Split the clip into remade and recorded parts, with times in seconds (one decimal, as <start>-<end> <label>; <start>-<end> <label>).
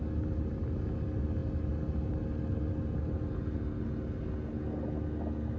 0.0-5.6 recorded